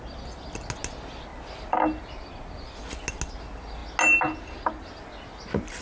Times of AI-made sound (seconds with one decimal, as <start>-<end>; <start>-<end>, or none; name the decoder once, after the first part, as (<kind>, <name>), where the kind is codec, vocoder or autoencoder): none